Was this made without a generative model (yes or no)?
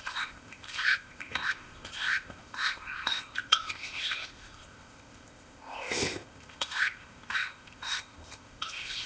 no